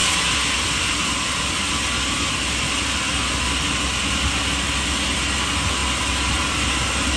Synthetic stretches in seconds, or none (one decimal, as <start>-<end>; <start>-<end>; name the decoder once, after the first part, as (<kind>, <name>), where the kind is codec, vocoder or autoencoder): none